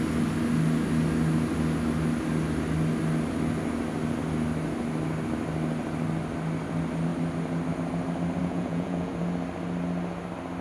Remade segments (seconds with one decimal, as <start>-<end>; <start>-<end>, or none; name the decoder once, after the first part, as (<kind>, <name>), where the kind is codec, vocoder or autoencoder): 8.4-9.2 (vocoder, Vocos)